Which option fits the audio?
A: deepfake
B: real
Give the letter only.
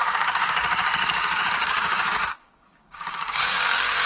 A